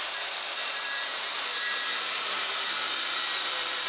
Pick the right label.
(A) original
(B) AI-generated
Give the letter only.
B